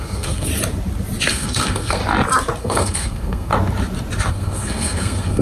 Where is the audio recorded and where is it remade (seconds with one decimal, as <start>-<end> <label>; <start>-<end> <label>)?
0.0-0.5 remade; 0.5-1.3 recorded; 1.3-2.0 remade; 2.0-2.6 recorded; 2.6-3.5 remade; 3.5-4.3 recorded; 4.3-5.4 remade